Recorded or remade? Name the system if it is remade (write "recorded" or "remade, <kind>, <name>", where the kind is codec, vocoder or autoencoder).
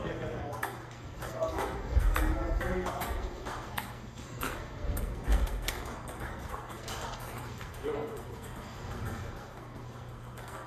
remade, codec, SNAC